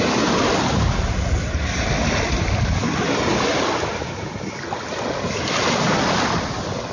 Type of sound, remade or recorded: recorded